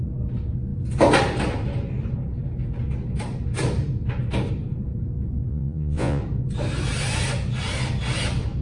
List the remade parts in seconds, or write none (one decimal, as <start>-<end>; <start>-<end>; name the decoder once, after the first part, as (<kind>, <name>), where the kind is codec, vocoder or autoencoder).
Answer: 5.5-6.2 (vocoder, Vocos)